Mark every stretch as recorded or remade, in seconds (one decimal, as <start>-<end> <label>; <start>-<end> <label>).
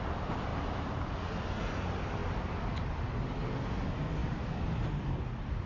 0.0-5.7 recorded